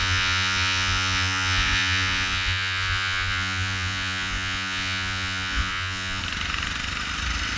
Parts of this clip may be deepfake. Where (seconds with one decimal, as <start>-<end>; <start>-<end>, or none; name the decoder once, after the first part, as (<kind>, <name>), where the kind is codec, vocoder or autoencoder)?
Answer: 0.0-6.2 (vocoder, Vocos)